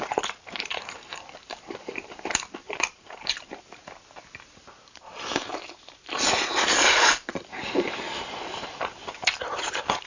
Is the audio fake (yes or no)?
yes